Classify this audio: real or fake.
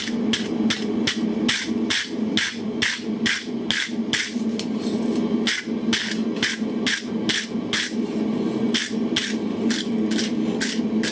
real